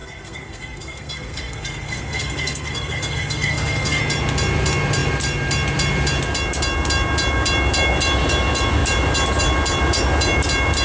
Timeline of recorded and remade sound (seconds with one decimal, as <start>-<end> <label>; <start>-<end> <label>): 0.0-4.0 remade; 4.0-10.8 recorded